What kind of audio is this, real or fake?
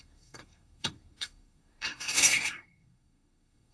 fake